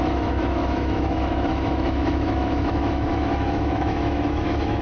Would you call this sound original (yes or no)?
no